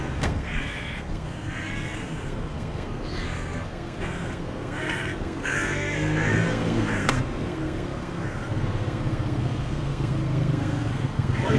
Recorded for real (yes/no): no